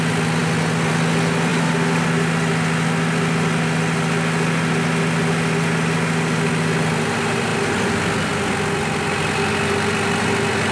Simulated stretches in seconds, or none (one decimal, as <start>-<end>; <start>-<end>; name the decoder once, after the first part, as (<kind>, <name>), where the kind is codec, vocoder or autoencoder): none